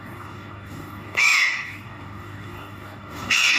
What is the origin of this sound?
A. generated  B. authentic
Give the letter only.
A